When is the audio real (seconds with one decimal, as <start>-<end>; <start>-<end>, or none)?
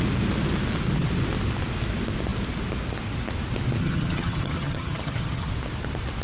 0.0-3.8; 5.5-6.2